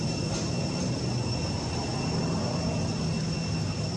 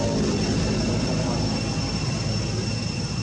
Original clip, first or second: first